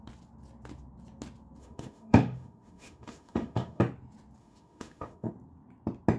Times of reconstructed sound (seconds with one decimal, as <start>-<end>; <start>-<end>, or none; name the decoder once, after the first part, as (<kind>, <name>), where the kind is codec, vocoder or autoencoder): 1.6-3.8 (autoencoder, DAC-VAE); 4.4-5.3